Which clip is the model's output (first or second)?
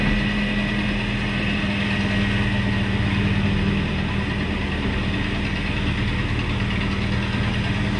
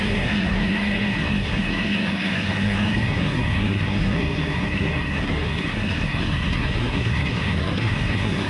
second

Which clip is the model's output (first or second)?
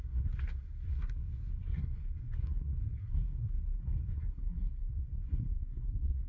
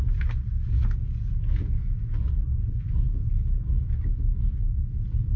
first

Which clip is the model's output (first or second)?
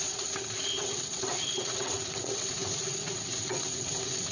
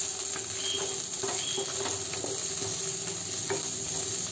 first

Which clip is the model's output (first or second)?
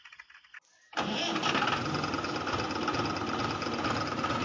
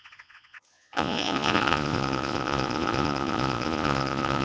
second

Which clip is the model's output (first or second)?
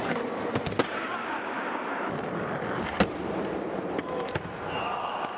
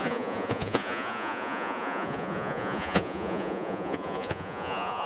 second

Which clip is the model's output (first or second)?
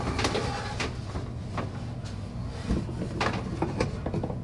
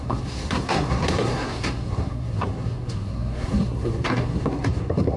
second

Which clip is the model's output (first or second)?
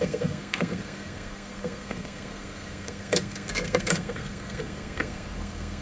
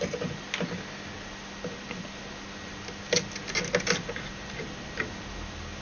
first